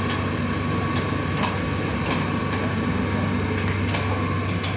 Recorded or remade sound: recorded